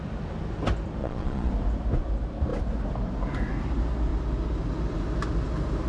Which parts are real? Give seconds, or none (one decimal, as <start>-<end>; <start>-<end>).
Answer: 0.0-1.0; 1.5-5.9